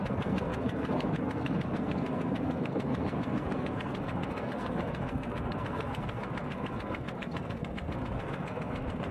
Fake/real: fake